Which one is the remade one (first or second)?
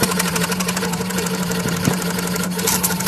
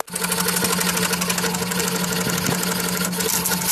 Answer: first